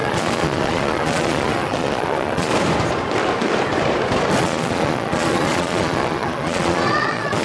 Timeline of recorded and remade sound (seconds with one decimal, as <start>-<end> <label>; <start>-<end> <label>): 0.0-2.5 remade; 2.5-4.4 recorded; 4.4-7.4 remade